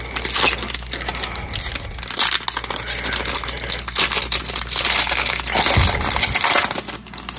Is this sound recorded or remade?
recorded